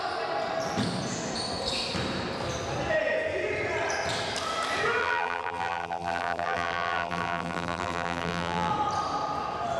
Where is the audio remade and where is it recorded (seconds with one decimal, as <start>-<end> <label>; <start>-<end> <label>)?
0.0-5.0 recorded; 5.0-8.7 remade; 8.7-9.8 recorded